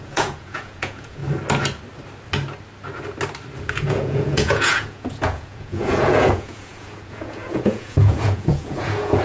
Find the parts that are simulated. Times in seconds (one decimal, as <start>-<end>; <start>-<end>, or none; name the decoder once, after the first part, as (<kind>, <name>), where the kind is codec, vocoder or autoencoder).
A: 0.0-1.2 (vocoder, Vocos); 3.7-9.2